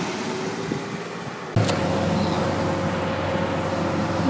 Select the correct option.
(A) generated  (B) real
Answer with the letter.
B